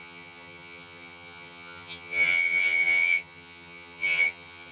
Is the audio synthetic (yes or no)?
yes